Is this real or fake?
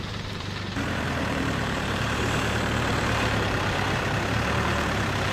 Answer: fake